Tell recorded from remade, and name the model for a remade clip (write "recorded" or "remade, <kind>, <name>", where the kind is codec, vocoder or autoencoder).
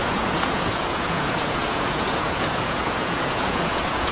remade, vocoder, Vocos